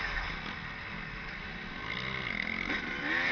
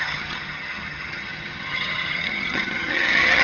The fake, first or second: second